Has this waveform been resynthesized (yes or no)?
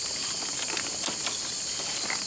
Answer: no